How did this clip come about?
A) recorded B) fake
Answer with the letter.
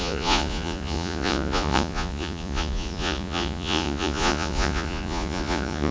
B